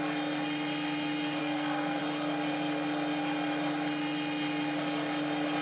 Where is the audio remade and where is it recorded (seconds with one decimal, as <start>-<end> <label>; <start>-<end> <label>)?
0.0-1.4 recorded; 1.4-2.0 remade; 2.0-5.6 recorded